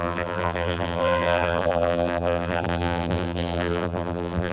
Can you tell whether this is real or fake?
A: fake